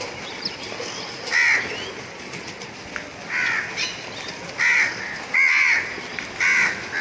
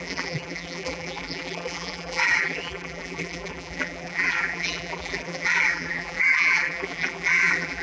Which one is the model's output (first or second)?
second